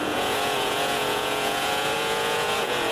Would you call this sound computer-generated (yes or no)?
yes